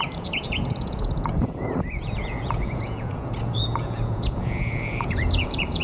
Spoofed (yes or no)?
yes